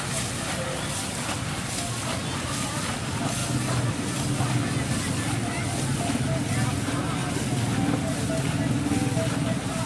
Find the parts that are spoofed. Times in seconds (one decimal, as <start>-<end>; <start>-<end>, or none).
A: none